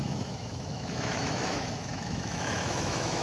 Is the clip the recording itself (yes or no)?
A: no